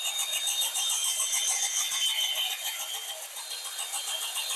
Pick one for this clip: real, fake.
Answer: real